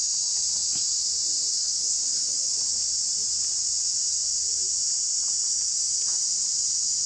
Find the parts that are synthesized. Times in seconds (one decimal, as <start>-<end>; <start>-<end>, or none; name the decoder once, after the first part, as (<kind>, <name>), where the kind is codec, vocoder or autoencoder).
1.6-2.5 (codec, HILCodec)